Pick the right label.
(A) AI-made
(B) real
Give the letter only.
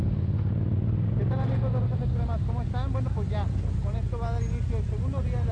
B